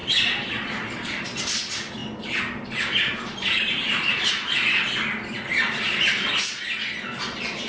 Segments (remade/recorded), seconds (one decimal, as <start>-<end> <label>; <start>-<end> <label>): 0.0-7.7 recorded

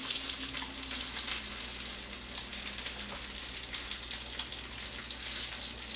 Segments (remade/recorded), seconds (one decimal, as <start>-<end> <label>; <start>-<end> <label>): 0.0-6.0 recorded